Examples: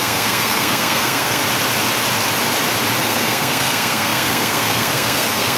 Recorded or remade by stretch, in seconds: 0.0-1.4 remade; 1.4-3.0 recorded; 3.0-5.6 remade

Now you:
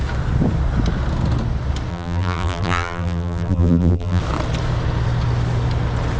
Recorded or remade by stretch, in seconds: 0.0-1.9 recorded; 1.9-4.2 remade; 4.2-6.2 recorded

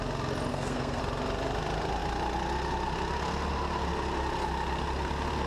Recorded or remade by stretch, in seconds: 0.0-0.5 recorded; 0.5-1.0 remade; 1.0-5.5 recorded

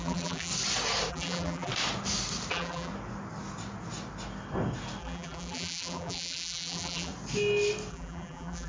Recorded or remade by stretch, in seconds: 0.0-0.5 remade; 0.5-1.1 recorded; 1.1-1.7 remade; 1.7-2.5 recorded; 2.5-2.9 remade; 2.9-5.0 recorded; 5.0-7.1 remade; 7.1-7.9 recorded; 7.9-8.7 remade

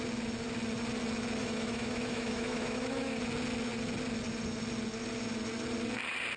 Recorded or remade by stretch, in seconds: 0.0-1.4 recorded; 1.4-3.2 remade; 3.2-6.4 recorded